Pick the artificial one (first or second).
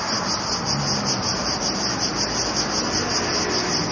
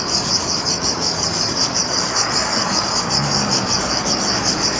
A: second